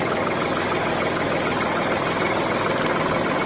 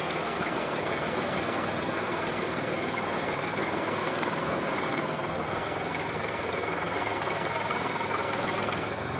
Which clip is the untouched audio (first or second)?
first